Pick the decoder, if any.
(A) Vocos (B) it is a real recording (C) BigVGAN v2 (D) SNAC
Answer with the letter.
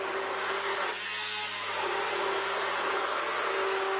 B